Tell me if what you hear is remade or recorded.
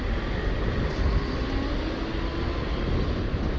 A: recorded